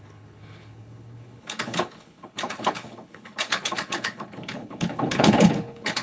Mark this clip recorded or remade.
remade